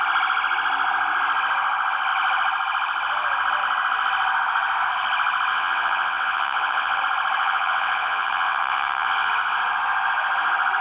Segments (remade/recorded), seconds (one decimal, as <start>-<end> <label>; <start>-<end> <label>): 0.0-5.5 recorded; 5.5-7.0 remade; 7.0-7.4 recorded; 7.4-9.3 remade; 9.3-10.8 recorded